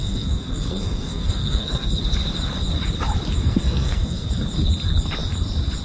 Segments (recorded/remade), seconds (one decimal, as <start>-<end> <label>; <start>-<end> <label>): 0.0-1.9 remade; 1.9-3.4 recorded; 3.4-4.3 remade; 4.3-5.8 recorded